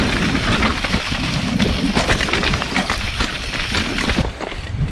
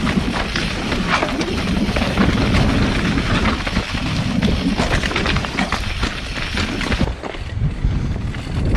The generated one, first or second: first